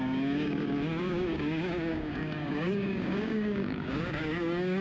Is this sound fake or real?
fake